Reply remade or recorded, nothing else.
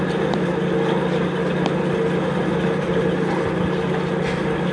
recorded